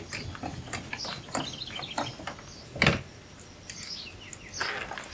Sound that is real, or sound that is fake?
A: real